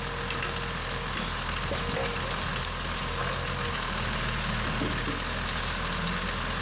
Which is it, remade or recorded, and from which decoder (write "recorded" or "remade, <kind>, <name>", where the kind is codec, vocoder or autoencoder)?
recorded